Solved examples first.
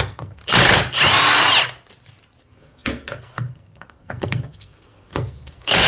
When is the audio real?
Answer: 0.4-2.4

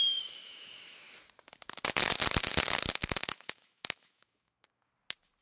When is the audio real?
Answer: 0.0-0.4; 1.2-3.0; 4.9-5.4

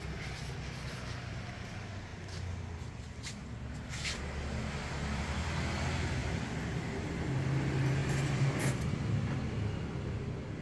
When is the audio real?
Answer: 0.0-10.6

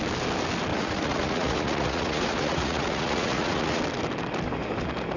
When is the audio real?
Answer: 0.0-0.7; 3.8-5.2